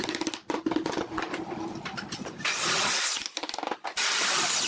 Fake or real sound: real